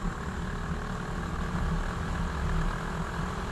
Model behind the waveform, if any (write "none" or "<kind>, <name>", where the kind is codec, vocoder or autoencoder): none